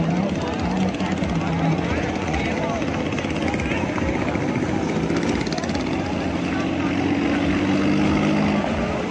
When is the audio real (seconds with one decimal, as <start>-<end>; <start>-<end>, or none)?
0.0-1.7; 2.4-9.1